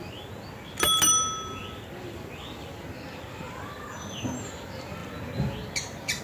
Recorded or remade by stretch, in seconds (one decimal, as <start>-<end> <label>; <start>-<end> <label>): 0.0-6.2 recorded